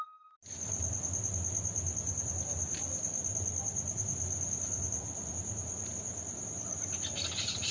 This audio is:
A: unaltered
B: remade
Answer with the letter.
A